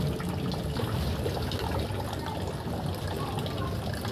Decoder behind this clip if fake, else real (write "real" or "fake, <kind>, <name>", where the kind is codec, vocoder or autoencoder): real